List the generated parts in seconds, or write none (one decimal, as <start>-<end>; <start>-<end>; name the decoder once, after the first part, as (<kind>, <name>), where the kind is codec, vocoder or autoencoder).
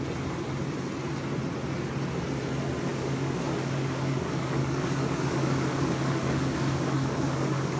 2.9-7.8 (codec, DAC)